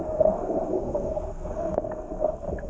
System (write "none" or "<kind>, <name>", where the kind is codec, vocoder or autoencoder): codec, SNAC